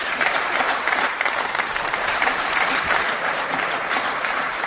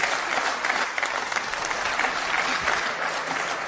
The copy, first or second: first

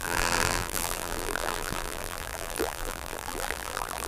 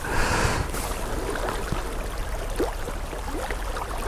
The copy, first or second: first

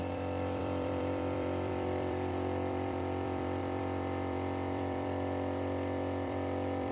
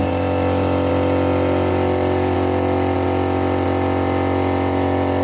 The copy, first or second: first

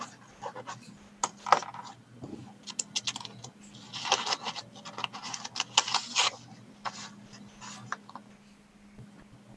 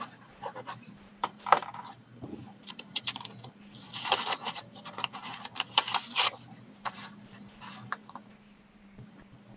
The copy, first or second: second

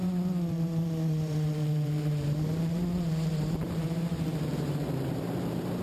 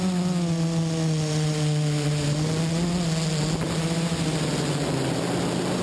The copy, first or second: first